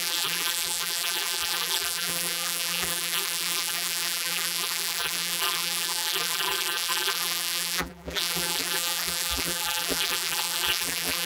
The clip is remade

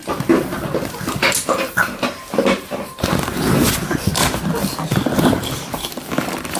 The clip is recorded